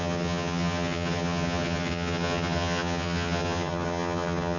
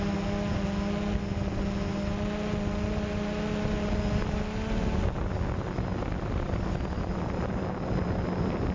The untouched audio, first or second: second